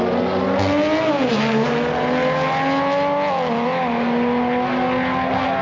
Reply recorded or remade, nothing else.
recorded